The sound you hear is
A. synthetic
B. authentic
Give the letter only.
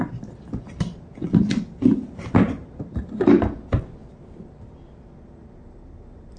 B